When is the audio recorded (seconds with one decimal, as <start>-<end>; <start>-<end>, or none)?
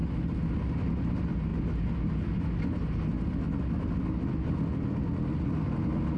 0.0-6.2